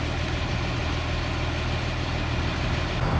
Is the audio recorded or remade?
recorded